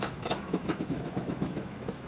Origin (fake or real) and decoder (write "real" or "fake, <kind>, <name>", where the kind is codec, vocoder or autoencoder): fake, autoencoder, DAC-VAE